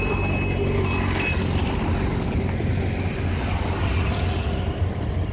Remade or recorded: recorded